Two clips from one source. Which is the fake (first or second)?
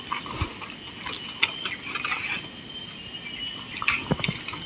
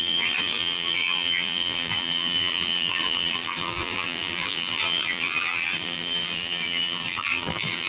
second